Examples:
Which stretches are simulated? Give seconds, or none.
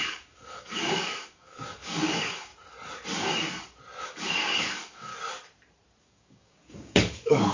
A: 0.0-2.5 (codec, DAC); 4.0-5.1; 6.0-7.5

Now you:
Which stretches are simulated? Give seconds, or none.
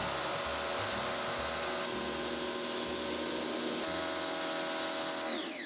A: none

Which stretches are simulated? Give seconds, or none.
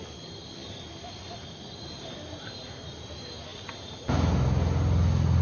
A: none